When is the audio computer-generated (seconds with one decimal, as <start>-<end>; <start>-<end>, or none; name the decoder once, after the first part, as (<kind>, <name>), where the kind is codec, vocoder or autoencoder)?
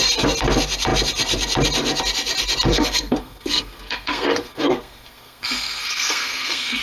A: 2.7-6.8 (codec, SNAC)